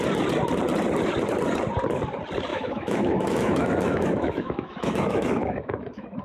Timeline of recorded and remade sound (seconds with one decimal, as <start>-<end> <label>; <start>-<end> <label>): 0.0-2.5 recorded; 2.5-6.2 remade